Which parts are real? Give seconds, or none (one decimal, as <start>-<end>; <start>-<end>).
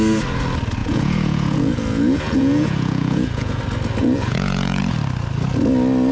0.0-0.8; 3.6-4.0; 4.8-6.1